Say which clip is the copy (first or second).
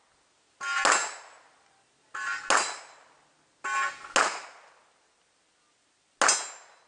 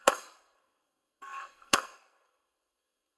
second